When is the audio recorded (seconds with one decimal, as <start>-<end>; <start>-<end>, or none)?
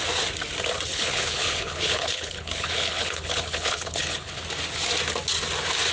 0.0-0.9; 4.4-5.9